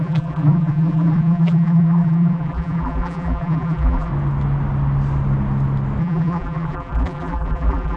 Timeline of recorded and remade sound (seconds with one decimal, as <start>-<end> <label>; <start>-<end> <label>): 0.0-4.1 remade; 4.1-6.0 recorded; 6.0-8.0 remade